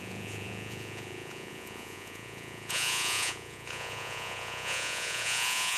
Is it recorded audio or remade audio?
remade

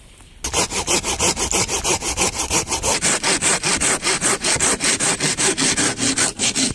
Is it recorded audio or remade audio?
recorded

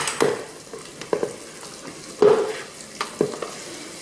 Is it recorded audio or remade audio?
recorded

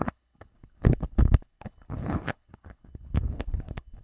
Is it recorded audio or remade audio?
remade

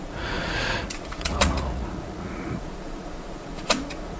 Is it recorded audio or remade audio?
remade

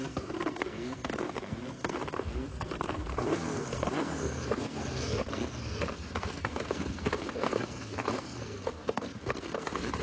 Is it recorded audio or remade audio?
remade